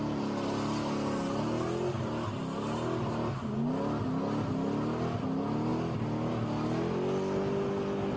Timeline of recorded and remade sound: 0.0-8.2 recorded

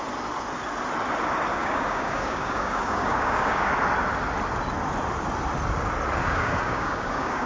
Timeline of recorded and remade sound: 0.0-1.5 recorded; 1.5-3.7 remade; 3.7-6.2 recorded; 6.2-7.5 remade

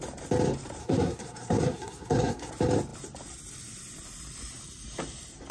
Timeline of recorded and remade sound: 0.0-0.8 recorded; 0.8-2.5 remade; 2.5-5.5 recorded

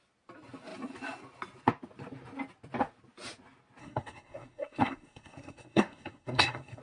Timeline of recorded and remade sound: 0.0-3.8 recorded; 3.8-6.8 remade

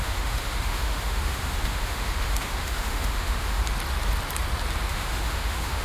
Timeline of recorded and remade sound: 0.0-3.6 remade; 3.6-4.9 recorded; 4.9-5.8 remade

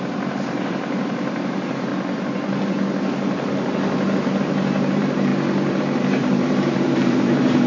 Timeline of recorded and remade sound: 0.0-1.9 remade; 1.9-4.4 recorded; 4.4-5.3 remade; 5.3-5.8 recorded; 5.8-7.7 remade

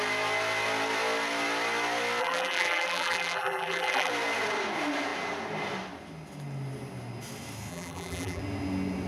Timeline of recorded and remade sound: 0.0-2.2 recorded; 2.2-4.1 remade; 4.1-7.7 recorded; 7.7-8.4 remade; 8.4-9.1 recorded